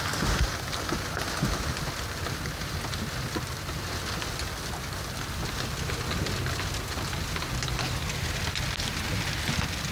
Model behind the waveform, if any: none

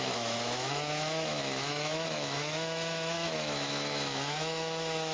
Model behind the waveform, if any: autoencoder, DAC-VAE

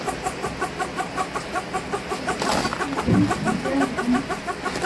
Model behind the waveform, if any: none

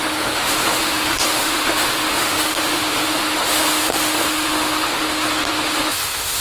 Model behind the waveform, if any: autoencoder, DAC-VAE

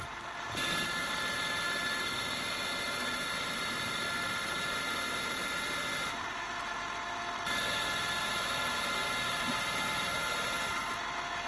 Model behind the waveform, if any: none